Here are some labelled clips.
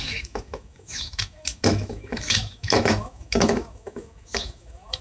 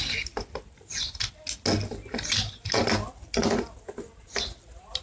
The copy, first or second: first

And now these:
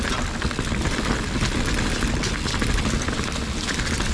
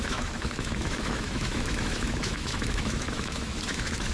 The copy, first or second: second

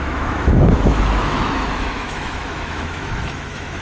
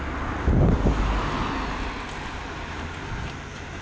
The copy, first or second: first